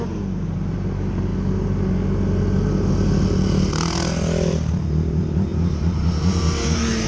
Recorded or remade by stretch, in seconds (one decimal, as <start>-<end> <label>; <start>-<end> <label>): 0.0-7.1 recorded